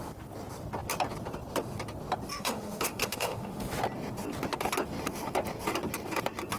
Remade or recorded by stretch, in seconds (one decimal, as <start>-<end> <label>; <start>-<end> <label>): 0.0-2.3 recorded; 2.3-3.7 remade; 3.7-6.6 recorded